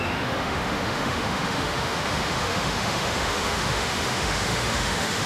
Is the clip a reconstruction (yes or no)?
yes